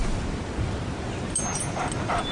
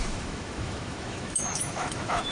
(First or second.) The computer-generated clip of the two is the second